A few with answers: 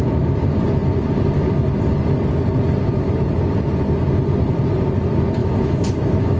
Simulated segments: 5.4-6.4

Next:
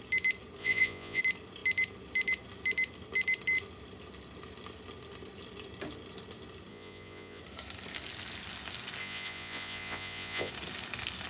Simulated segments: 0.6-1.2; 6.7-7.4; 9.0-10.5

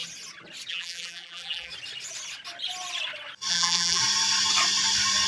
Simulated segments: 0.7-1.7; 3.5-4.0

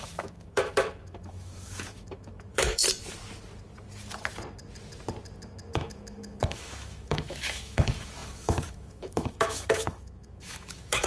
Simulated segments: 0.0-2.8; 5.7-11.1

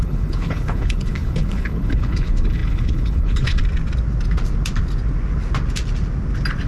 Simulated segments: 0.0-3.6

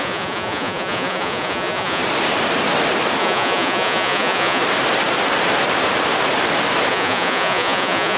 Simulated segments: 0.0-2.0; 3.2-4.6; 6.9-8.2

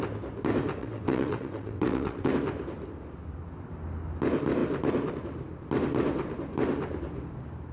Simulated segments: 0.8-2.3